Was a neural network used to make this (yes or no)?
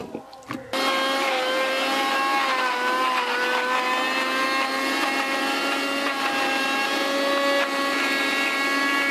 no